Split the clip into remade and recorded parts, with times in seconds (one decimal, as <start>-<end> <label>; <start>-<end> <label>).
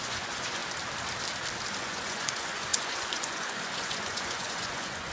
0.0-0.6 remade; 0.6-1.8 recorded; 1.8-5.1 remade